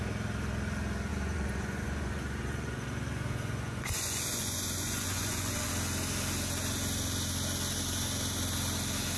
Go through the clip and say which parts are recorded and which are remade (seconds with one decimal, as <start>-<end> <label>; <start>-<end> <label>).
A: 0.0-1.1 recorded; 1.1-5.7 remade; 5.7-9.2 recorded

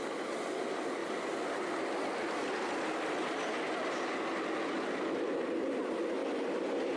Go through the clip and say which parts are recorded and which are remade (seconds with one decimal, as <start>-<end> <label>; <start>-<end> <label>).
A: 0.0-7.0 recorded

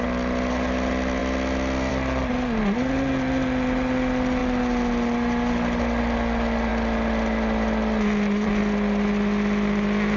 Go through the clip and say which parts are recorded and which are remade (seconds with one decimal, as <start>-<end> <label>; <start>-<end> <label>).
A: 0.0-10.2 recorded

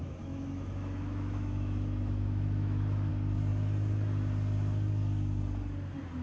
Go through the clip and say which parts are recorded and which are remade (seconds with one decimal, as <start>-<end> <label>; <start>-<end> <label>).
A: 0.0-3.1 remade; 3.1-6.2 recorded

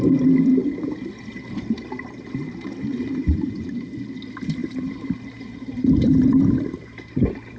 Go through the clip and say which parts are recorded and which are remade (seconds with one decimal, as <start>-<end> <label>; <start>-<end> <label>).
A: 0.0-0.5 recorded; 0.5-3.6 remade; 3.6-4.6 recorded; 4.6-7.6 remade